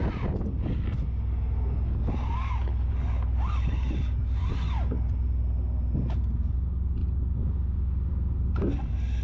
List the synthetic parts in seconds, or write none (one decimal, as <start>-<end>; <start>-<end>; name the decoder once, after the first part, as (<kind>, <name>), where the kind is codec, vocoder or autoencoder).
none